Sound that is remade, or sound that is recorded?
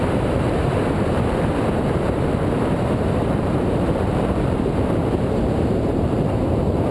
remade